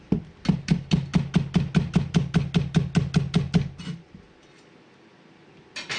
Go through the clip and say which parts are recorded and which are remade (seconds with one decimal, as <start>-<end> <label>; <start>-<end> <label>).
0.0-6.0 recorded